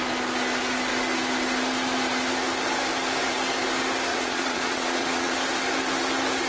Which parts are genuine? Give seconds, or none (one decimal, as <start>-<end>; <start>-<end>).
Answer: 0.0-4.1; 5.4-6.5